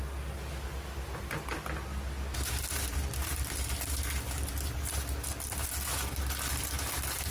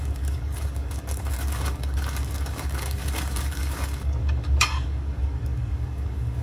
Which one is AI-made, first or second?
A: second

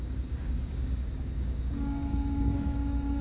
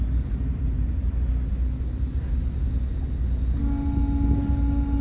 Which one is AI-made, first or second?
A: first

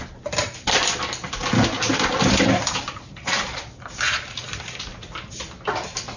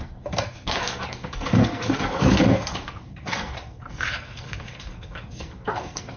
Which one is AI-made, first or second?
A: second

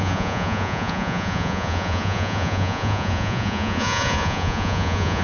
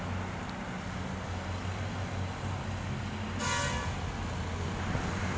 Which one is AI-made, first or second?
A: first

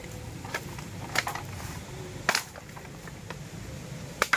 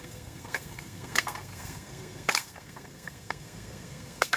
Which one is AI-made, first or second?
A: second